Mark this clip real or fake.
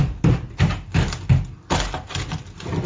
real